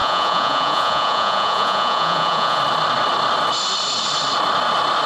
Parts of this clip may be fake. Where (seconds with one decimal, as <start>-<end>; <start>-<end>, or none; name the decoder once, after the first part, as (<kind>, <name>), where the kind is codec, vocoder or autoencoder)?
0.0-2.6 (vocoder, Vocos)